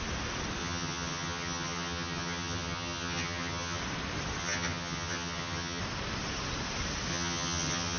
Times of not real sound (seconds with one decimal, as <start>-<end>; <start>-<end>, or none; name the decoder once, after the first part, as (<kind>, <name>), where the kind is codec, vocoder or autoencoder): 0.6-3.8 (vocoder, HiFi-GAN); 4.4-5.8; 7.1-8.0